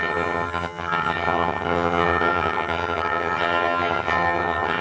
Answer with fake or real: fake